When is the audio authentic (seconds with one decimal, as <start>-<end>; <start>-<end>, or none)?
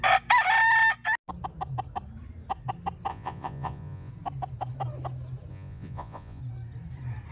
0.0-3.1; 4.1-5.5; 6.4-7.3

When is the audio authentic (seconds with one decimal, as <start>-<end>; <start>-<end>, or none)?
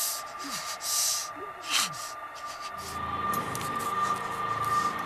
0.0-5.1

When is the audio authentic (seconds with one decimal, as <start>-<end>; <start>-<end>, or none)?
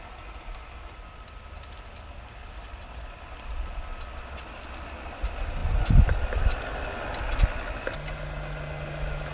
0.0-9.3